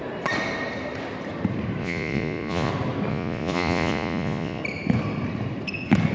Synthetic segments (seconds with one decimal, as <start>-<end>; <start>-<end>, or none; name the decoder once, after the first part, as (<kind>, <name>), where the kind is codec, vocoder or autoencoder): 1.8-2.7 (vocoder, Vocos); 3.1-4.6